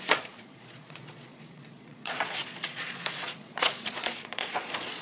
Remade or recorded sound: remade